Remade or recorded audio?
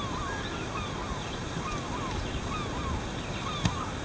recorded